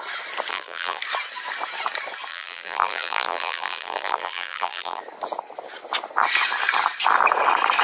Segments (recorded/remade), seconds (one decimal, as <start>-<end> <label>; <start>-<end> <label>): 0.0-0.5 recorded; 0.5-1.0 remade; 1.0-2.3 recorded; 2.3-5.0 remade; 5.0-7.8 recorded